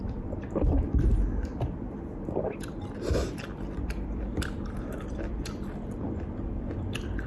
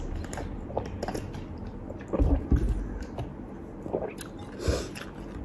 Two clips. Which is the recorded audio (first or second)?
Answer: second